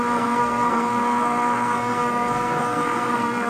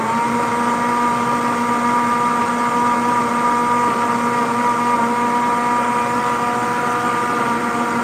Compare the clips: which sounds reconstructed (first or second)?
first